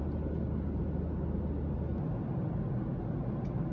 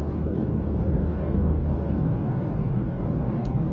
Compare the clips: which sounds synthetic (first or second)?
second